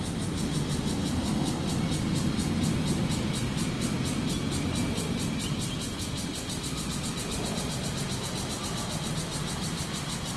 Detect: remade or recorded recorded